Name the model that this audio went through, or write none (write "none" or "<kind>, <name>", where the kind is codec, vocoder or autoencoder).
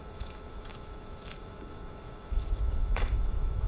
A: autoencoder, DAC-VAE